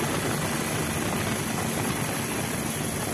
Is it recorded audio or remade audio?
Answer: recorded